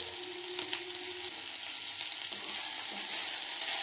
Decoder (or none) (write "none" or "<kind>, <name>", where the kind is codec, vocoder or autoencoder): none